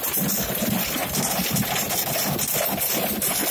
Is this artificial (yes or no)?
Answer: yes